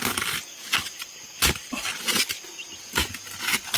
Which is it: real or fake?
real